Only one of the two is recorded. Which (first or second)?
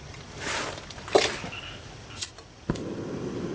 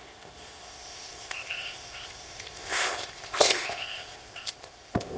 first